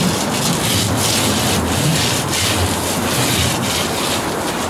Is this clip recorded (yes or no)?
yes